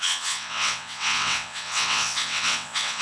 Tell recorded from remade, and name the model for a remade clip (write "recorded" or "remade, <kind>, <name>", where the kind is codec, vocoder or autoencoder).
remade, vocoder, WaveNeXt